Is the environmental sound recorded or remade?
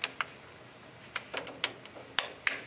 remade